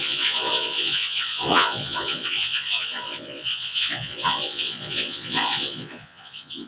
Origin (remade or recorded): remade